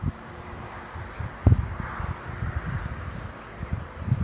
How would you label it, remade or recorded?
recorded